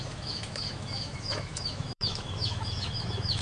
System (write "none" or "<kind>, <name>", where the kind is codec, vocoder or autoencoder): autoencoder, DAC-VAE